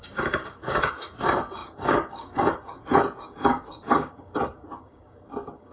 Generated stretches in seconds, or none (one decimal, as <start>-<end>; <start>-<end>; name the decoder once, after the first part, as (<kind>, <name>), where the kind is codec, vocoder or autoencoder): 0.0-5.7 (codec, DAC)